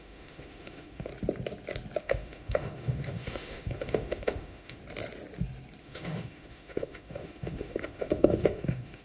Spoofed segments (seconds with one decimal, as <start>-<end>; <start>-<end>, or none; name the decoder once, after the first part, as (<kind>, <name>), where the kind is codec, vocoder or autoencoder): 0.0-1.1 (autoencoder, DAC-VAE); 2.0-4.8; 5.8-9.0